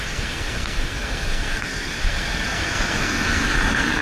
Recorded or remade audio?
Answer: remade